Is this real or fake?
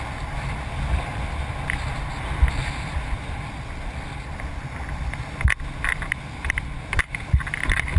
real